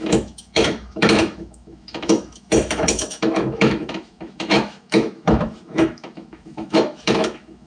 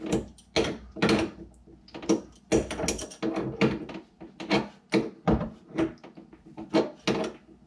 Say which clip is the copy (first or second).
first